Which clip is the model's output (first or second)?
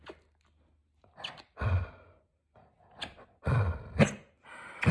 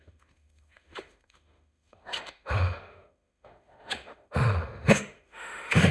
second